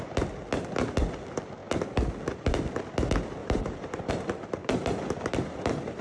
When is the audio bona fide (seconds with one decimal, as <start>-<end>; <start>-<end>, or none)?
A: 0.0-3.4; 4.1-4.6